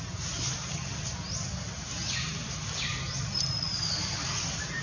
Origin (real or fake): real